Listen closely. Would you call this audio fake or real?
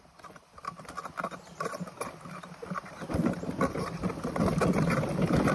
real